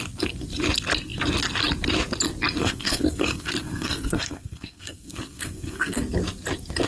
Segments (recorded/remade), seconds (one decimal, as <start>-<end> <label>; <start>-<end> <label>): 0.0-2.6 recorded; 2.6-6.0 remade; 6.0-6.9 recorded